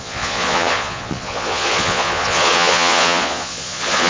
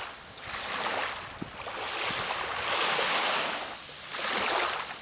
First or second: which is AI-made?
first